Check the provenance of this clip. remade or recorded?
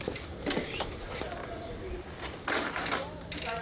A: recorded